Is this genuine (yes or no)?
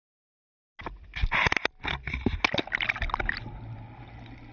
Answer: yes